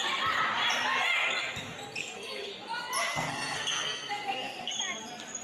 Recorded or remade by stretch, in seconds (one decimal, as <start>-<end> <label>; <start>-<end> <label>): 0.0-2.0 recorded; 2.0-2.5 remade; 2.5-3.1 recorded; 3.1-4.7 remade; 4.7-5.4 recorded